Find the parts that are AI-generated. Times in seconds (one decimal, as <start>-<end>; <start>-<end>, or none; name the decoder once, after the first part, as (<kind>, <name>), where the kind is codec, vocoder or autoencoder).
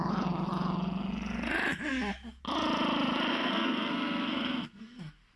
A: 3.3-5.0 (codec, SNAC)